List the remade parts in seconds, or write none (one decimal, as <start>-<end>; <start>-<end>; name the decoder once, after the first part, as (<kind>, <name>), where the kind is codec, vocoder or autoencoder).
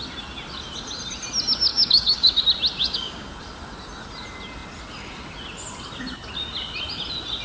1.7-2.4 (codec, DAC); 2.8-3.3